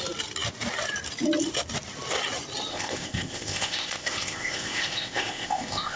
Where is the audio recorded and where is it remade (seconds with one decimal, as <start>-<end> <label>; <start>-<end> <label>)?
0.0-2.7 recorded; 2.7-6.0 remade